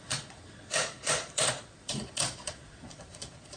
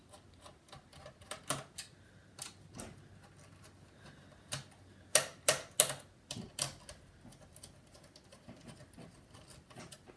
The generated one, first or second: first